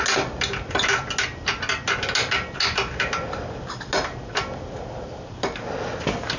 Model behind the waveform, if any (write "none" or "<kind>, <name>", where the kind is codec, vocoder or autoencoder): none